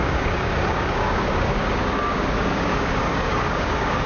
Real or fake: fake